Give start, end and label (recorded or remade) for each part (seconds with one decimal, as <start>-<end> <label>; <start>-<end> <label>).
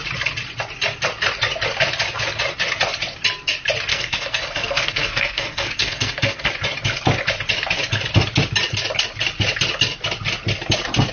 0.0-3.9 recorded; 3.9-6.5 remade; 6.5-11.1 recorded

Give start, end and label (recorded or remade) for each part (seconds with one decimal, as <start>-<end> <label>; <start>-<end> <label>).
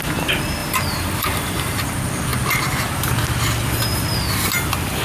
0.0-0.6 recorded; 0.6-1.9 remade; 1.9-5.0 recorded